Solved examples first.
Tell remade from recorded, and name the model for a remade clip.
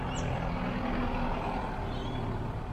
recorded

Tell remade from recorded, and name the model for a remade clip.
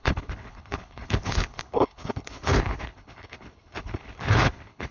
remade, codec, HILCodec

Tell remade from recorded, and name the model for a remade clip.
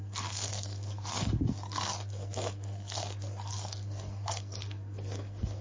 remade, codec, SNAC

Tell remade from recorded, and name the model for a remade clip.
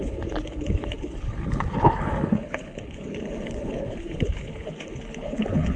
remade, codec, HILCodec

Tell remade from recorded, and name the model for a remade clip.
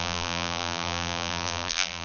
remade, vocoder, BigVGAN v2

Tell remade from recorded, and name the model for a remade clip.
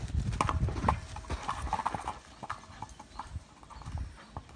recorded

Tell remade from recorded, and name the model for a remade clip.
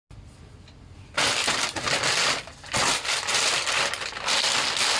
recorded